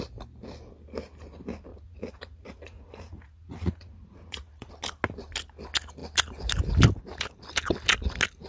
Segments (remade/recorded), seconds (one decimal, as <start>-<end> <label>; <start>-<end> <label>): 0.0-1.7 recorded; 1.7-4.7 remade; 4.7-8.5 recorded